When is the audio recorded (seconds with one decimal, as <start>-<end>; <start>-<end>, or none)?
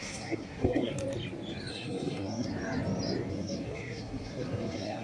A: 0.9-1.7; 2.5-3.3